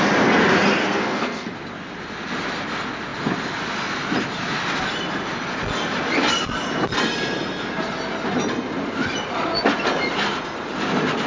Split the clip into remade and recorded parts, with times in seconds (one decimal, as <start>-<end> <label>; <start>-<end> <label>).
0.0-0.8 recorded; 0.8-1.5 remade; 1.5-11.3 recorded